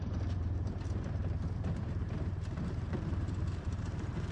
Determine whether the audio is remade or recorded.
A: remade